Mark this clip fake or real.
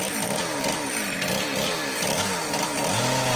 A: real